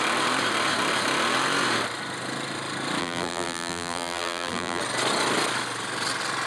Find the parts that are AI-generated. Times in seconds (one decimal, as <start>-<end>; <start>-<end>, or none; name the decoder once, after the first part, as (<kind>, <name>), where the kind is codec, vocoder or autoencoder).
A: 3.0-4.8 (vocoder, BigVGAN v2)